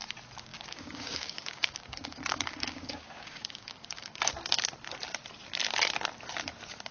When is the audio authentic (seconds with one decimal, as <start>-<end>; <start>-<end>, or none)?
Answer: 0.0-0.5; 4.3-6.9